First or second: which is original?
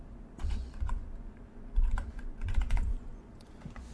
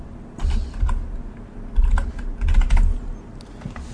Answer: second